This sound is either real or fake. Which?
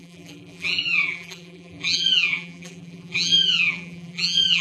fake